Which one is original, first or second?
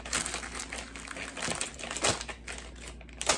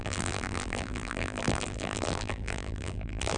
first